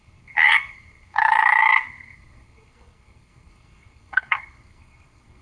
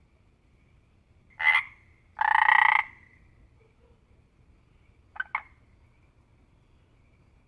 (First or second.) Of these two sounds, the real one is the second